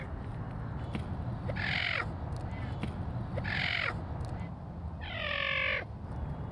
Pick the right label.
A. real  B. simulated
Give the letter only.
A